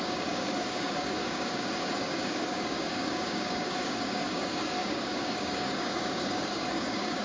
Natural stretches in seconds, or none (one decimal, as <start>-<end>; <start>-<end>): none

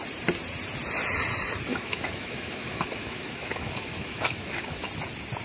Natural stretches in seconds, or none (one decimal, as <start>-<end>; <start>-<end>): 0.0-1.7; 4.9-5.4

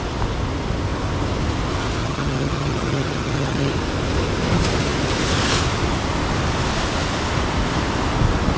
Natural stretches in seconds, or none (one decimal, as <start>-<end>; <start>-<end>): 0.0-2.0; 3.7-8.6

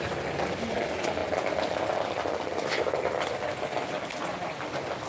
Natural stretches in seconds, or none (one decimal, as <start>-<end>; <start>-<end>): 0.0-5.1